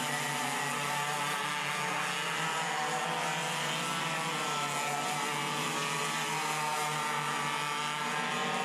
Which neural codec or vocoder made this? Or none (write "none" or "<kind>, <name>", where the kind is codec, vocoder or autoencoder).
none